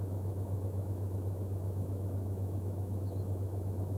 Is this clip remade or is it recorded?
remade